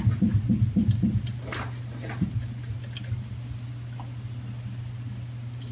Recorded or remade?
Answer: recorded